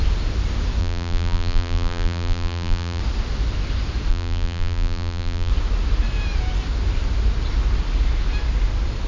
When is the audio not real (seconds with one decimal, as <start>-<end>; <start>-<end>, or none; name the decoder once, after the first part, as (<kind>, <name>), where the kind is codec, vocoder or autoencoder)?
0.8-3.0 (vocoder, BigVGAN v2); 4.1-5.5